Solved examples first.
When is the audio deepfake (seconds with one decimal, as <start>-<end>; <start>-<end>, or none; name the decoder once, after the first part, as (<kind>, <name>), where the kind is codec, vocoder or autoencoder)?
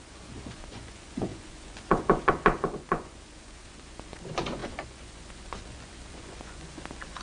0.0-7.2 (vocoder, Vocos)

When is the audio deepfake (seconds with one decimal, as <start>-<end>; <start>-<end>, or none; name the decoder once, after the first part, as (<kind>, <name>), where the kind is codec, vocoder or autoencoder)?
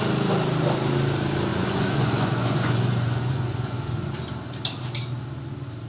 1.5-4.2 (vocoder, Vocos)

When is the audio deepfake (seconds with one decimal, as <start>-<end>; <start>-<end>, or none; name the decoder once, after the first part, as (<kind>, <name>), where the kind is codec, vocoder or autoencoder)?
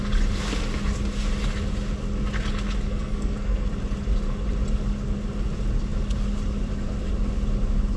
2.9-3.7 (codec, SNAC)